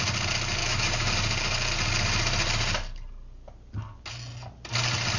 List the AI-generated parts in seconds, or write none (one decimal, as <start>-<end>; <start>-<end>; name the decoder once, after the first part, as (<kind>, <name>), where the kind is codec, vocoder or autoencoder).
0.6-1.1 (autoencoder, DAC-VAE)